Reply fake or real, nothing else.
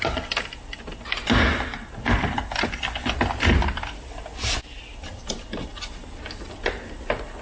real